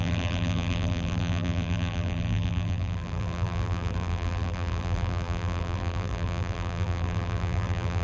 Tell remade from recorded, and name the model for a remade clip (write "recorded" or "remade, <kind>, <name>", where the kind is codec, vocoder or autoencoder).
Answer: remade, vocoder, BigVGAN v2